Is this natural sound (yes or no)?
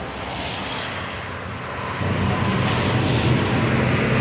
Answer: yes